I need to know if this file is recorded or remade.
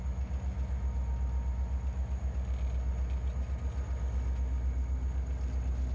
recorded